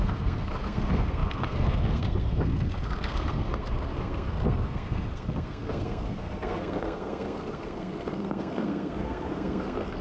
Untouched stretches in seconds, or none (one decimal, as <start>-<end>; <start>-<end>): none